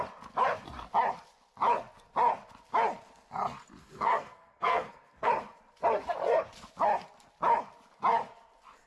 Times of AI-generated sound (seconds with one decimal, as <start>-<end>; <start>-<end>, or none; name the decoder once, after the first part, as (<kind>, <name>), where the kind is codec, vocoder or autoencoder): 3.8-5.3 (codec, SNAC)